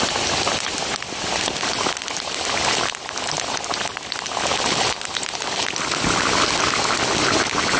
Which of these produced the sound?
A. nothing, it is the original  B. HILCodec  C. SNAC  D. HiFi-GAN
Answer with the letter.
A